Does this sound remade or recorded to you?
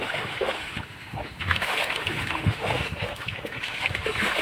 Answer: remade